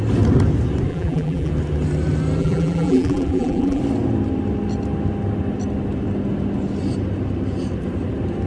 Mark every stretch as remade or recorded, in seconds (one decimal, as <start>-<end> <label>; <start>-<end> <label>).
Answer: 0.0-0.9 recorded; 0.9-1.5 remade; 1.5-2.4 recorded; 2.4-3.8 remade; 3.8-8.5 recorded